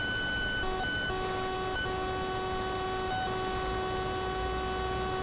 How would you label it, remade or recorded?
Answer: recorded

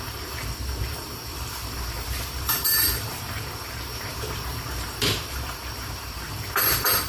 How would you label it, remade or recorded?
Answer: remade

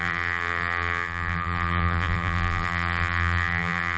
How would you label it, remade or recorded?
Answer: remade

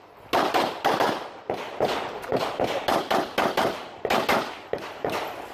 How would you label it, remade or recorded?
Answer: recorded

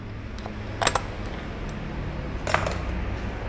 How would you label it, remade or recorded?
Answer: recorded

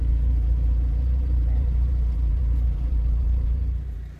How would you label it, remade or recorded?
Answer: remade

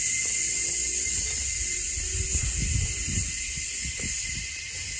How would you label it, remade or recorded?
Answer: recorded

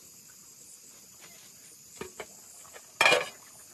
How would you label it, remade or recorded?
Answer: recorded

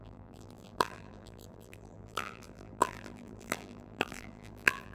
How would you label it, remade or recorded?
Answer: remade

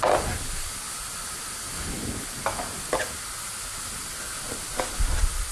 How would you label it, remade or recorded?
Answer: recorded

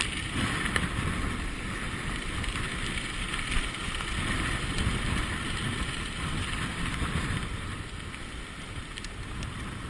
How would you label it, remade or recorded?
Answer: remade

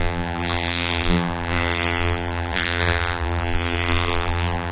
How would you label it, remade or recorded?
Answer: remade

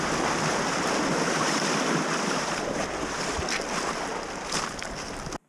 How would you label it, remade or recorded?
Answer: recorded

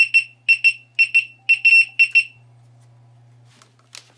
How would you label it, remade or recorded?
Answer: recorded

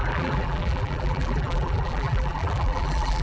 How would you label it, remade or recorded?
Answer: remade